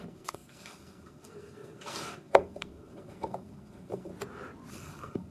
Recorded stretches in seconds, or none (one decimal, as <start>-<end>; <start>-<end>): 4.1-4.7